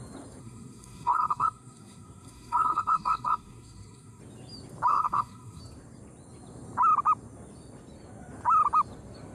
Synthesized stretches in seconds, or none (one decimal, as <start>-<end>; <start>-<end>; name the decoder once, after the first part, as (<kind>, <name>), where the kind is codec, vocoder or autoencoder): 0.4-4.2 (codec, SNAC); 4.9-5.6

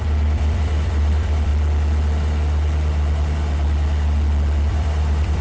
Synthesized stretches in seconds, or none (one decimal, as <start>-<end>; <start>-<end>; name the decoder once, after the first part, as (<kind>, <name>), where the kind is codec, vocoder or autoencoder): 0.0-1.5 (vocoder, BigVGAN v2); 4.7-5.4

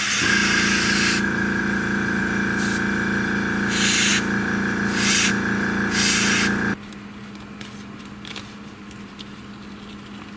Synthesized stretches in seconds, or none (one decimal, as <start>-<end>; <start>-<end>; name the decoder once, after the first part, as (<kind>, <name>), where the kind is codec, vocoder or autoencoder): none